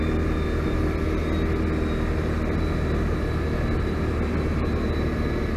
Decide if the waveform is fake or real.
real